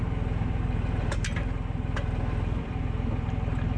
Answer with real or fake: real